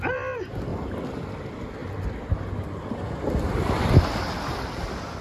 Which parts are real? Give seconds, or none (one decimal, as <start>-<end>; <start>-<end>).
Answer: 0.0-5.2